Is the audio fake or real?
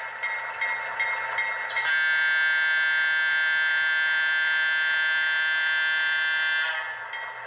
real